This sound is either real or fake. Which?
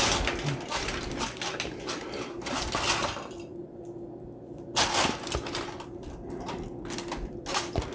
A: real